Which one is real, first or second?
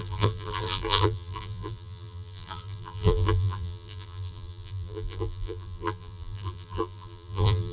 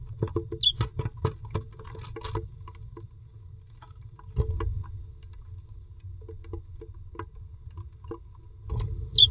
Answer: second